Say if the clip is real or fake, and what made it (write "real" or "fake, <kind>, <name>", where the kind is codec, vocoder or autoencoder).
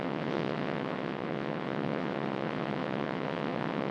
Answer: fake, vocoder, WaveNeXt